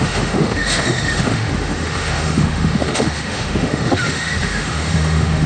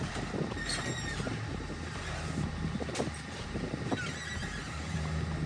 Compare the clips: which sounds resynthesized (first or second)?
first